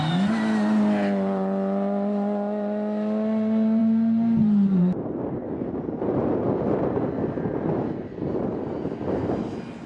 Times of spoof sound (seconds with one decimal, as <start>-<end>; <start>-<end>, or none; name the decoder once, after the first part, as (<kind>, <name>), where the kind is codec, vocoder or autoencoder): none